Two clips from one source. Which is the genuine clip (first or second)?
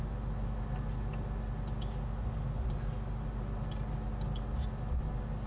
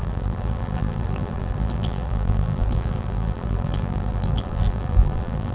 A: first